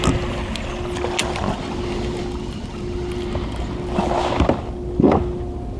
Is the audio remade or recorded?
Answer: recorded